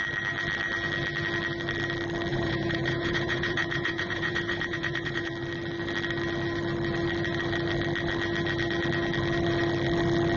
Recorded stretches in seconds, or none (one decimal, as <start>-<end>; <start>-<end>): 0.0-2.3; 5.3-10.4